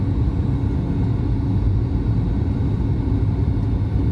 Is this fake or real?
real